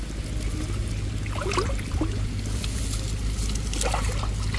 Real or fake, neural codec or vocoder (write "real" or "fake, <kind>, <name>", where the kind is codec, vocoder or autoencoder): real